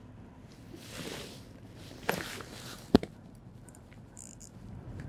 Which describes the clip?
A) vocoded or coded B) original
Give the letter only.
A